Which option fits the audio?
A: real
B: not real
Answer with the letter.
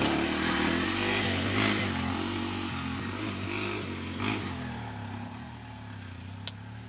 A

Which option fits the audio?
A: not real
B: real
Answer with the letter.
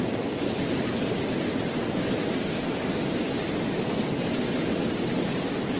A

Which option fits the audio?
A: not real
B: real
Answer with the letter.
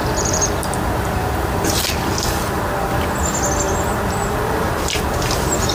A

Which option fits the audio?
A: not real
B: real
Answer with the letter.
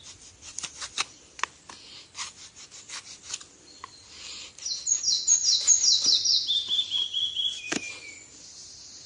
B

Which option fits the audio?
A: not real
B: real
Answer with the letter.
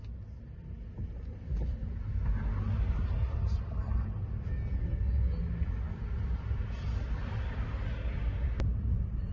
B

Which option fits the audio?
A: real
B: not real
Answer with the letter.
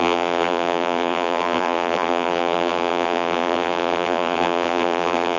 B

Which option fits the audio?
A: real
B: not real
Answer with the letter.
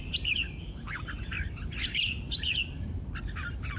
B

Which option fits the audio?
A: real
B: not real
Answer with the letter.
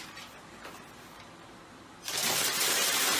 B